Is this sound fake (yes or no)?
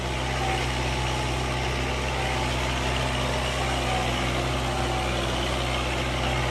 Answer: no